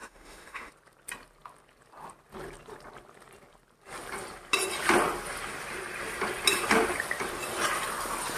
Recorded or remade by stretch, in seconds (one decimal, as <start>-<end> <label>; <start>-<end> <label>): 0.0-0.7 remade; 0.7-8.4 recorded